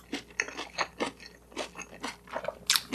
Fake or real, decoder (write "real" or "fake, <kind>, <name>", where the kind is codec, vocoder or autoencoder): real